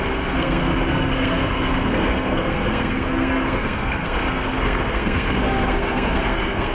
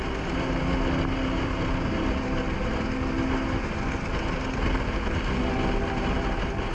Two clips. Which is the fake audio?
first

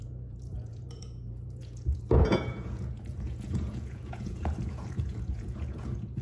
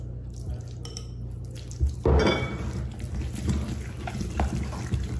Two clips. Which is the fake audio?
first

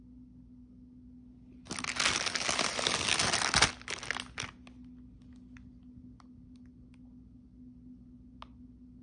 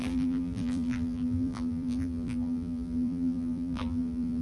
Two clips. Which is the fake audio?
second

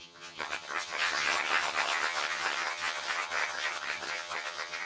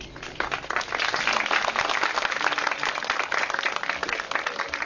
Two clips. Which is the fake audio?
first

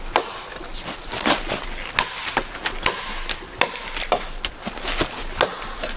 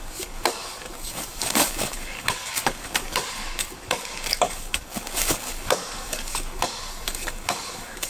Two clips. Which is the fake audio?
second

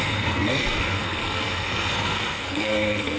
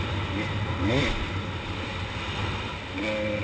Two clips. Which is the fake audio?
first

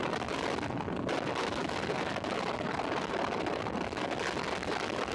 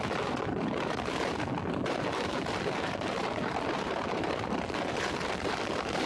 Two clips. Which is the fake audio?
second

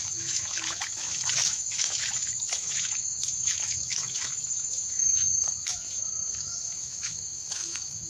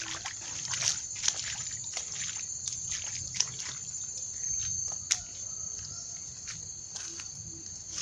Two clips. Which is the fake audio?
first